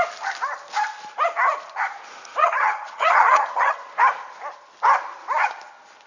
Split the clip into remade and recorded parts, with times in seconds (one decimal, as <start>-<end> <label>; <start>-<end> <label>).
0.0-2.4 recorded; 2.4-3.7 remade; 3.7-6.1 recorded